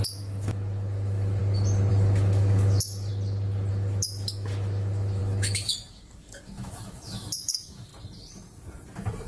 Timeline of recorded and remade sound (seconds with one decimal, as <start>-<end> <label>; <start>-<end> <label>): 0.0-1.4 remade; 1.4-1.9 recorded; 1.9-3.1 remade; 3.1-3.7 recorded; 3.7-7.9 remade; 7.9-9.3 recorded